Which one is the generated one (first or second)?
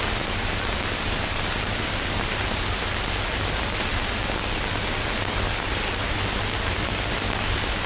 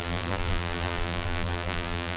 second